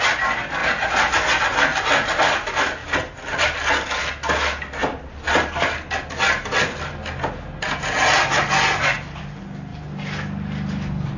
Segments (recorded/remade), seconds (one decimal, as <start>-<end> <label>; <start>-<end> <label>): 0.0-11.2 recorded